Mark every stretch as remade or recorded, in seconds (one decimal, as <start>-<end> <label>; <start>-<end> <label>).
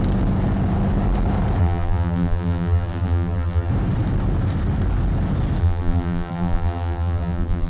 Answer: 0.0-1.6 recorded; 1.6-3.7 remade; 3.7-5.6 recorded; 5.6-7.7 remade